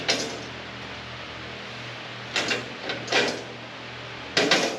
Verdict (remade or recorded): recorded